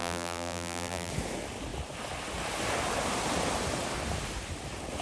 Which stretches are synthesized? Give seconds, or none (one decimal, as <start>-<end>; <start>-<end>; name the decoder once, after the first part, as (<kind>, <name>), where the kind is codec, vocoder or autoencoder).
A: 0.0-1.1 (vocoder, BigVGAN v2)